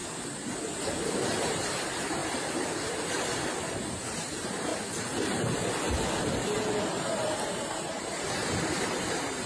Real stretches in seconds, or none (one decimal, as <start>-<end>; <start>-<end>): 0.0-1.4; 2.2-3.7; 4.7-6.8

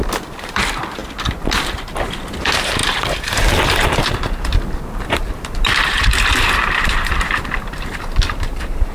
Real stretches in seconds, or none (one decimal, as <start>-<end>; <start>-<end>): 1.0-2.4

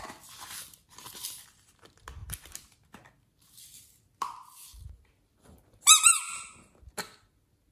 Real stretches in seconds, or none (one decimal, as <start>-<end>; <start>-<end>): 0.0-7.7

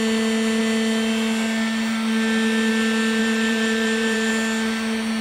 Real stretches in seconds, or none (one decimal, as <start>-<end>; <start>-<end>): 0.0-3.2; 4.3-5.2

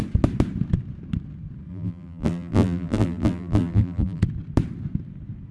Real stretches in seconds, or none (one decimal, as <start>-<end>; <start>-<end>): 0.0-1.7; 4.2-5.5